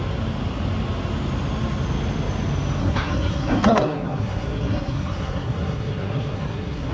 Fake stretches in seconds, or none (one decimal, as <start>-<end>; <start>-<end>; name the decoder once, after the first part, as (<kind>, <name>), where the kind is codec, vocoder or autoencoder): 2.8-6.9 (codec, SNAC)